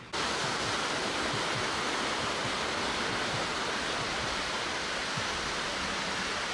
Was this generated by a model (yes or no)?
no